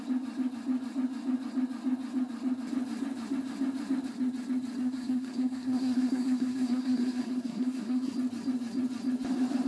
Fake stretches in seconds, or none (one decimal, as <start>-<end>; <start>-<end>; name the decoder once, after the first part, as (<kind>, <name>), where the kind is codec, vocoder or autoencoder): 4.8-8.1 (codec, SNAC)